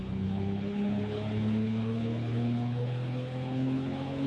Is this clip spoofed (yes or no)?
yes